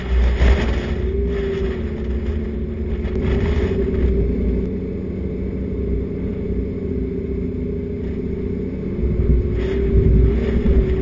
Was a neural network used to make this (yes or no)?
no